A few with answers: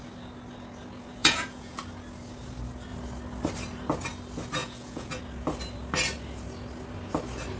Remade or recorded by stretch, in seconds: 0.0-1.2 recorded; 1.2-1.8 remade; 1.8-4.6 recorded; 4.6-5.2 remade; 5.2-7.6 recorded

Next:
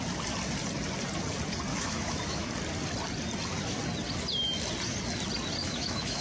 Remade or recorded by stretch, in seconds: 0.0-1.7 recorded; 1.7-2.5 remade; 2.5-5.6 recorded; 5.6-6.2 remade

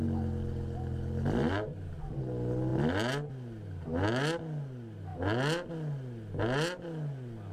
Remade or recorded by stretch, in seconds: 0.0-7.5 recorded

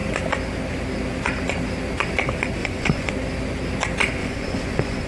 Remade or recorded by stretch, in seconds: 0.0-2.6 recorded; 2.6-3.1 remade; 3.1-4.2 recorded; 4.2-5.1 remade

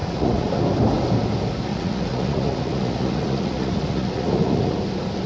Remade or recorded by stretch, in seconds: 0.0-0.6 remade; 0.6-1.7 recorded; 1.7-4.8 remade; 4.8-5.3 recorded

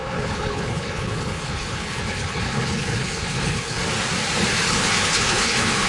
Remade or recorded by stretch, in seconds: 0.0-3.8 remade; 3.8-4.7 recorded; 4.7-5.9 remade

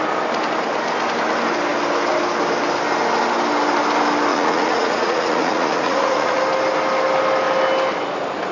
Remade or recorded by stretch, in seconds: 0.0-4.3 recorded; 4.3-6.4 remade; 6.4-8.5 recorded